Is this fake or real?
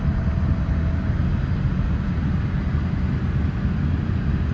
real